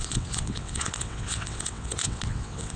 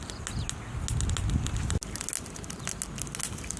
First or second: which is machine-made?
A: first